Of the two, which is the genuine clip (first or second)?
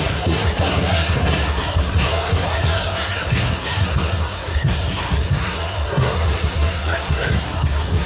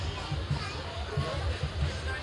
second